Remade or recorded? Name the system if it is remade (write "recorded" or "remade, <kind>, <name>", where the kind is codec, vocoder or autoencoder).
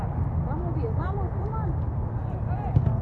recorded